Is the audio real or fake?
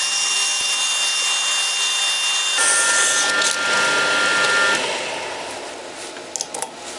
real